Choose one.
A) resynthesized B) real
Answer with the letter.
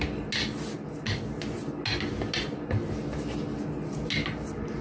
B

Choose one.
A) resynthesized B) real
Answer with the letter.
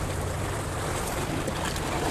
A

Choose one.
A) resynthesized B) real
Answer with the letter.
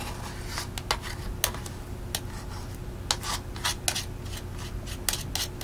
B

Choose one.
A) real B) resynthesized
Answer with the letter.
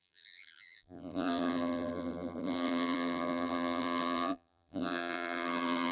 B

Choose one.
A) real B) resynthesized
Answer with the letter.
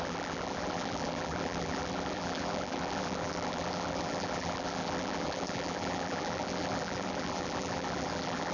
B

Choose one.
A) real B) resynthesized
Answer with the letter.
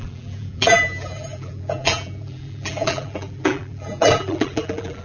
B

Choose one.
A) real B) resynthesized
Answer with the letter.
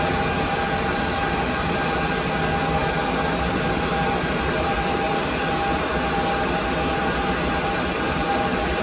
A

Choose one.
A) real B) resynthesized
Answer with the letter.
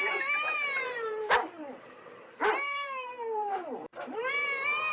B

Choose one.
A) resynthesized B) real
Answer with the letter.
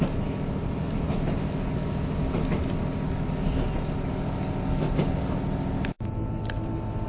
B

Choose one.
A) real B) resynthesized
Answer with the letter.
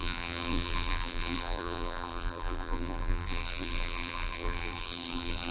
B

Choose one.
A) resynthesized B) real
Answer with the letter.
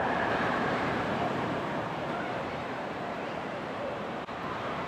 A